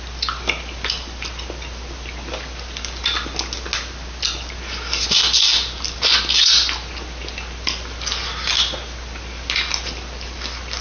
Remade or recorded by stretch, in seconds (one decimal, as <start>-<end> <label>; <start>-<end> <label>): 0.0-10.8 recorded